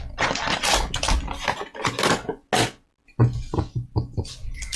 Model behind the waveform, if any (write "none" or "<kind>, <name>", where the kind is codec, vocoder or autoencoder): none